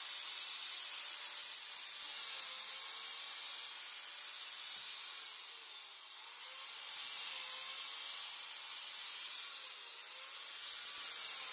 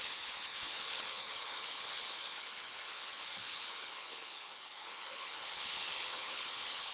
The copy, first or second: second